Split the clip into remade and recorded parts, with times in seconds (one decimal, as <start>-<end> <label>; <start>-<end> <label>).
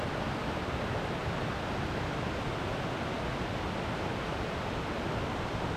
0.0-5.8 recorded